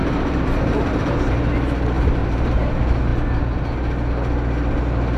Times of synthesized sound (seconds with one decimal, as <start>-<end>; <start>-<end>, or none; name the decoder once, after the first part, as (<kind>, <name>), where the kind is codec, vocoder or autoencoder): 0.0-1.5 (vocoder, BigVGAN v2); 2.2-2.7